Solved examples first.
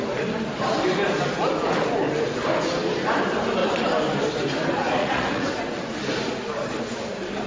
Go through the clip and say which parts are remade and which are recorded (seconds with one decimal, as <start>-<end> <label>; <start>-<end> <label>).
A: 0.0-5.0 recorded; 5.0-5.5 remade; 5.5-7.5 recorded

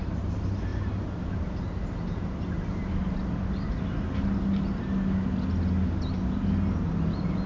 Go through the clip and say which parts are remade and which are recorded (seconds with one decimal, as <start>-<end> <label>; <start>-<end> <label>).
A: 0.0-7.5 recorded

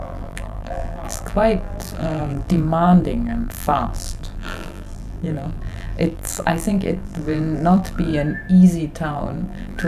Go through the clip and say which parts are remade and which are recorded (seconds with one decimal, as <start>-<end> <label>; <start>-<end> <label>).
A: 0.0-8.1 remade; 8.1-9.1 recorded; 9.1-9.9 remade